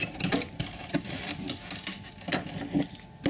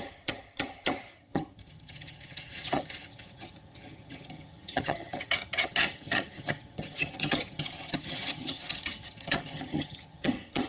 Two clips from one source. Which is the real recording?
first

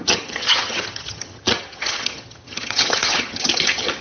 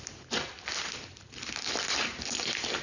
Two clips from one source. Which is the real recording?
second